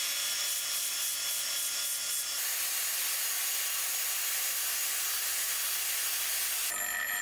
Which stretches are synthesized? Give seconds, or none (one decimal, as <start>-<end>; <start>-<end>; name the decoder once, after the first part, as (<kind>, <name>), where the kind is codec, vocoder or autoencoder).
none